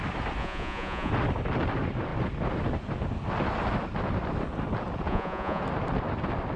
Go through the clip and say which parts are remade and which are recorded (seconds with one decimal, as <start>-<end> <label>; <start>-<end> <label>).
0.0-0.4 recorded; 0.4-1.1 remade; 1.1-5.1 recorded; 5.1-5.6 remade; 5.6-6.6 recorded